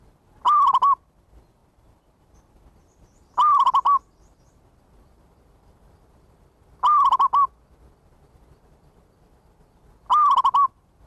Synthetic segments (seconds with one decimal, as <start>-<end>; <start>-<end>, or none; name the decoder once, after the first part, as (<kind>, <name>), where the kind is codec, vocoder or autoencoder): none